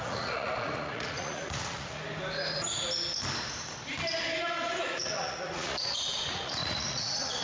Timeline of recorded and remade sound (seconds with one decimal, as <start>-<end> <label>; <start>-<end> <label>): 0.0-2.0 remade; 2.0-4.8 recorded; 4.8-7.4 remade